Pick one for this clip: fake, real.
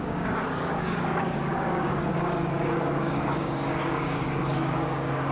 fake